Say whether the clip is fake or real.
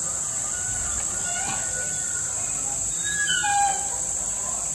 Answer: real